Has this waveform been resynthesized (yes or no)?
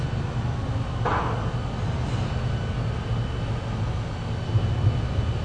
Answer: no